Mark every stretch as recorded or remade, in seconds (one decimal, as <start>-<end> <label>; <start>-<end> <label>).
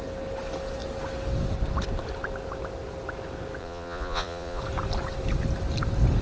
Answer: 0.0-3.6 recorded; 3.6-4.6 remade; 4.6-6.2 recorded